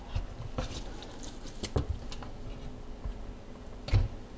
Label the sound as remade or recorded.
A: recorded